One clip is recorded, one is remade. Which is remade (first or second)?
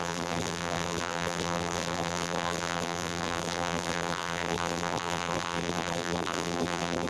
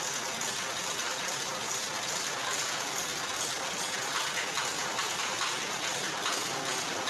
first